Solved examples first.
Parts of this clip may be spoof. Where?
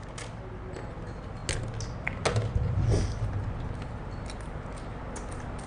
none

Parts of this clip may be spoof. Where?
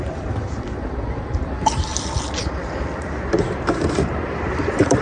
0.0-1.9 (vocoder, BigVGAN v2); 3.0-5.0